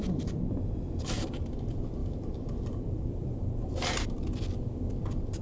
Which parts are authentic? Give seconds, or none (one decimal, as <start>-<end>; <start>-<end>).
0.0-2.0; 3.7-5.4